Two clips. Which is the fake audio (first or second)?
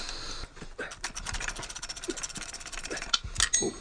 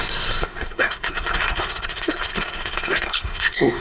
second